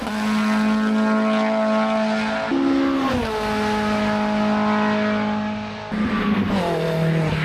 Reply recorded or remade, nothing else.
recorded